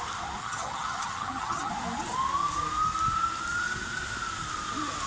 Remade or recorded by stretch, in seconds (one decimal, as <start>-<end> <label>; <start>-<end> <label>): 0.0-0.4 recorded; 0.4-1.7 remade; 1.7-5.1 recorded